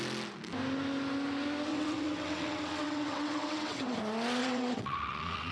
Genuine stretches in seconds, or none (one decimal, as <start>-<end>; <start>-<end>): 0.0-1.7; 4.0-4.4